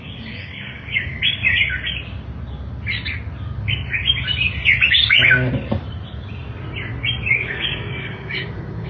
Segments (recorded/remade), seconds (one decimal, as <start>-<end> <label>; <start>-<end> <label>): 0.0-1.6 remade; 1.6-3.6 recorded; 3.6-4.0 remade; 4.0-7.3 recorded; 7.3-8.9 remade